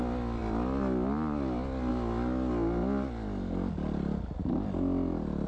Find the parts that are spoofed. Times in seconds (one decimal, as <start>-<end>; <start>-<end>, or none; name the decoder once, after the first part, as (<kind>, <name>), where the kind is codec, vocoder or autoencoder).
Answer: none